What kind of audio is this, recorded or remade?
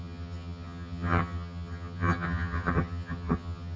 remade